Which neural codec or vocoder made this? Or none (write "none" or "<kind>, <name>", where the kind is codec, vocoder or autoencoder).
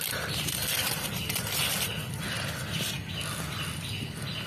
none